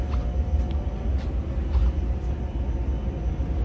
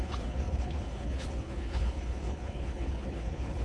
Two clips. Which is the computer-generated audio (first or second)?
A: second